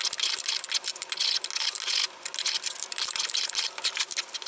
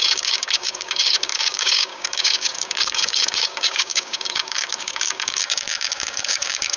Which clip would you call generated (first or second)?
second